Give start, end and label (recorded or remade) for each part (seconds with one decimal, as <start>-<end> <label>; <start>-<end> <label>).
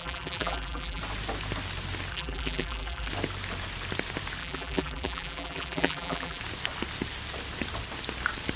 0.0-1.0 remade; 1.0-2.1 recorded; 2.1-3.1 remade; 3.1-4.4 recorded; 4.4-6.4 remade; 6.4-8.6 recorded